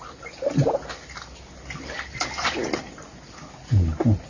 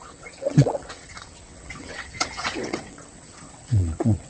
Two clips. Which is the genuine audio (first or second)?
first